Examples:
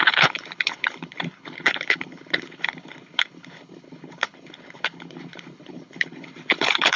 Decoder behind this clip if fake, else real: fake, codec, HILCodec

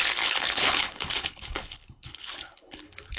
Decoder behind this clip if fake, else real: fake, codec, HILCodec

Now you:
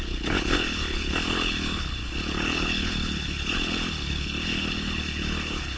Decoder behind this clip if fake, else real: fake, codec, HILCodec